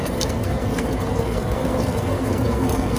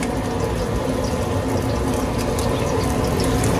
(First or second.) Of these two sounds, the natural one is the second